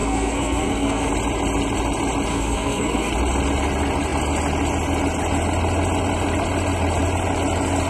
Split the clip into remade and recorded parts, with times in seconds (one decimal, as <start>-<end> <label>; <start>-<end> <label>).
0.0-1.1 remade; 1.1-2.3 recorded; 2.3-3.1 remade; 3.1-7.9 recorded